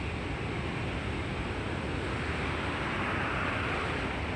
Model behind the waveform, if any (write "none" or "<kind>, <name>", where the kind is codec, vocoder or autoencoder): none